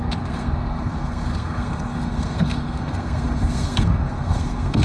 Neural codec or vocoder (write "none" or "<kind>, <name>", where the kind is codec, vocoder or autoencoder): codec, SNAC